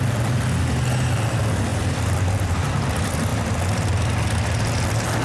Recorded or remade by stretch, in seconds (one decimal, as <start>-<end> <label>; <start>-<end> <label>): 0.0-1.7 recorded; 1.7-2.7 remade; 2.7-5.2 recorded